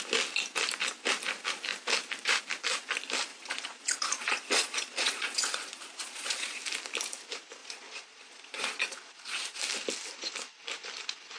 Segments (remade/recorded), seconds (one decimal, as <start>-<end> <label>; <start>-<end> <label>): 0.0-3.3 recorded; 3.3-6.6 remade; 6.6-7.6 recorded; 7.6-9.6 remade; 9.6-11.4 recorded